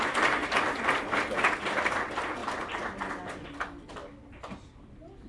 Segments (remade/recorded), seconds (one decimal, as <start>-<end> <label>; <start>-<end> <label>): 0.0-5.3 recorded